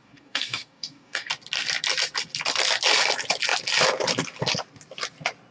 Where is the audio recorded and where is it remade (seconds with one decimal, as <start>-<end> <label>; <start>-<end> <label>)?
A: 0.0-1.3 remade; 1.3-5.5 recorded